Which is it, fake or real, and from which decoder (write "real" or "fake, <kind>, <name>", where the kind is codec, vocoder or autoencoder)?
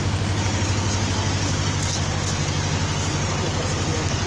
real